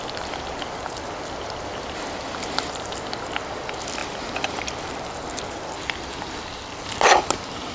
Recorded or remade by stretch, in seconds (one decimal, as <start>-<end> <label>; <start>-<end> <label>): 0.0-4.0 recorded; 4.0-5.1 remade; 5.1-7.7 recorded